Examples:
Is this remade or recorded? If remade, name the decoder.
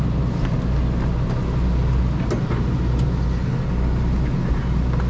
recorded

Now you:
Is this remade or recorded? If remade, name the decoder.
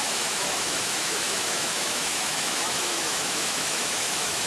remade, autoencoder, DAC-VAE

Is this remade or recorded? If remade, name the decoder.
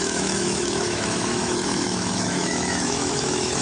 remade, autoencoder, DAC-VAE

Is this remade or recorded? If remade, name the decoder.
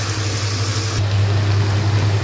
recorded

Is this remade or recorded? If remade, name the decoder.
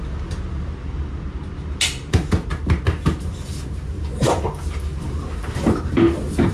recorded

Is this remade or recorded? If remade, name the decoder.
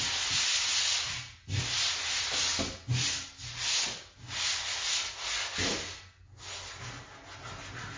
recorded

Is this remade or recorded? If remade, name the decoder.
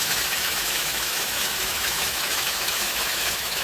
remade, autoencoder, DAC-VAE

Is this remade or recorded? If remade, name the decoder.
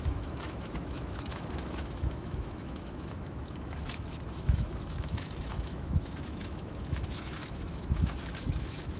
remade, autoencoder, DAC-VAE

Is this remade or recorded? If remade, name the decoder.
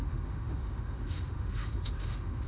remade, autoencoder, DAC-VAE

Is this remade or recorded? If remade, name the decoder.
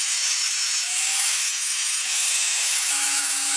remade, autoencoder, DAC-VAE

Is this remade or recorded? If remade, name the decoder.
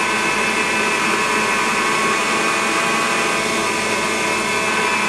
recorded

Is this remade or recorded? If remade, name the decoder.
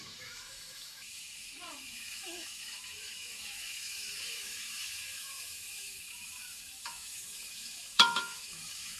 remade, autoencoder, DAC-VAE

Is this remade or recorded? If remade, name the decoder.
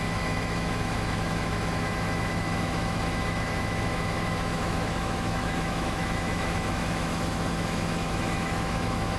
remade, autoencoder, DAC-VAE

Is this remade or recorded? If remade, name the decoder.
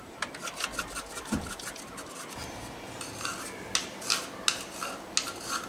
recorded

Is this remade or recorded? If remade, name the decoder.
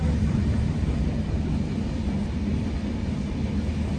recorded